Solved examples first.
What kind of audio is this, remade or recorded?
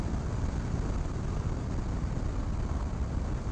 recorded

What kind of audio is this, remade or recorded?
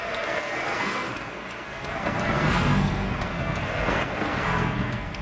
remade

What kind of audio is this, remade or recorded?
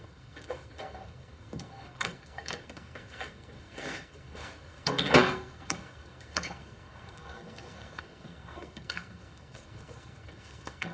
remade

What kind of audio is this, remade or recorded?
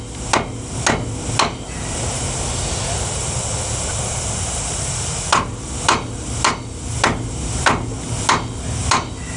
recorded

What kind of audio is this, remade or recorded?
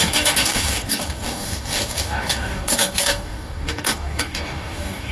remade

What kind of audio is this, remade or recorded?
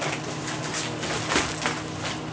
recorded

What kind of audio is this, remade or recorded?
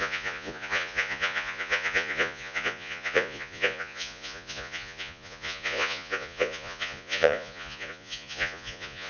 remade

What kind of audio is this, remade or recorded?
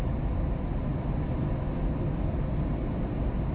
recorded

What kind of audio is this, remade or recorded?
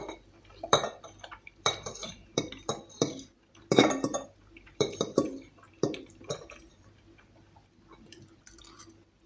remade